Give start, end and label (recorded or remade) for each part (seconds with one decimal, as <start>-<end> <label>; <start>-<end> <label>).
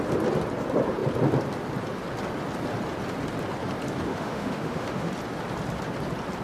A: 0.0-4.1 recorded; 4.1-5.1 remade; 5.1-6.4 recorded